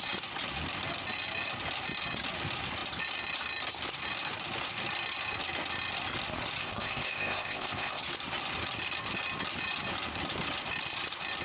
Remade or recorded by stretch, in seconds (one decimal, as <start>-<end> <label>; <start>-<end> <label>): 0.0-6.6 recorded; 6.6-8.0 remade; 8.0-11.4 recorded